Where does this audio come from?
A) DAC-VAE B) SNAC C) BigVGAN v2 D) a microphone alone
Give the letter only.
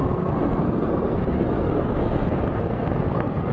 B